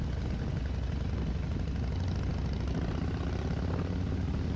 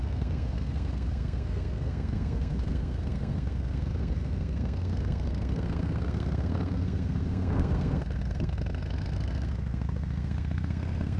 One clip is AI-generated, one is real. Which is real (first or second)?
first